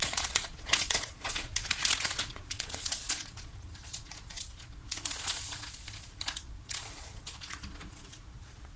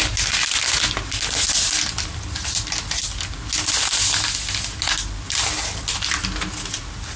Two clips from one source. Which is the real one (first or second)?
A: second